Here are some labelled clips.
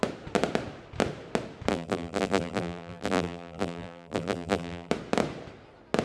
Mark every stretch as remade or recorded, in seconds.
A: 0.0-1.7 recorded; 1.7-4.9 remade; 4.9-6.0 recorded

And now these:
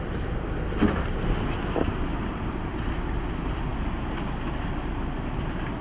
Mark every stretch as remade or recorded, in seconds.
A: 0.0-2.1 recorded; 2.1-3.3 remade; 3.3-5.8 recorded